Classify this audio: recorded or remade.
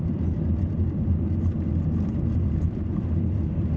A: remade